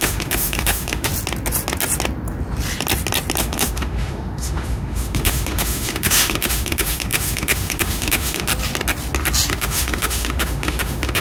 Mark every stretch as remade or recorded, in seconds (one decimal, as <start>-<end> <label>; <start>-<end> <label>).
0.0-1.1 remade; 1.1-3.4 recorded; 3.4-8.5 remade; 8.5-9.5 recorded; 9.5-11.2 remade